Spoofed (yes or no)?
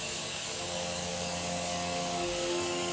yes